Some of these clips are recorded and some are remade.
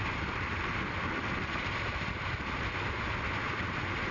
recorded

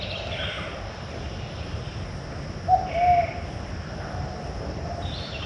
recorded